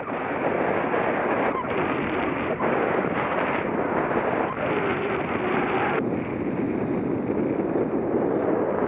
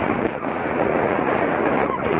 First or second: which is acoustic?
first